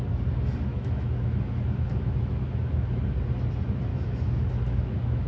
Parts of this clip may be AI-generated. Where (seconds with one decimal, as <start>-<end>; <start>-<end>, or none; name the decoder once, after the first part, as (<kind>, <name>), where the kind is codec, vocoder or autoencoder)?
0.7-3.0 (autoencoder, DAC-VAE); 3.9-5.3